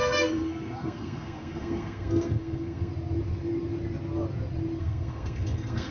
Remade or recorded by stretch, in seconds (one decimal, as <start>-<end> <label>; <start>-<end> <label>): 0.0-2.9 remade; 2.9-4.8 recorded; 4.8-5.9 remade